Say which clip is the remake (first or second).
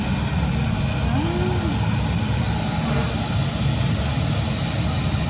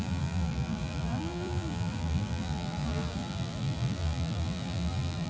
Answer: second